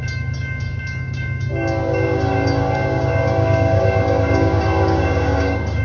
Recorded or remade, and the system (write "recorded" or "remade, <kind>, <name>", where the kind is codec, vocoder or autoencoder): remade, codec, DAC